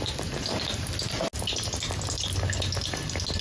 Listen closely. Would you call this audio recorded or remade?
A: recorded